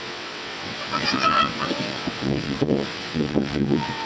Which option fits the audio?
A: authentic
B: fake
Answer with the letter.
B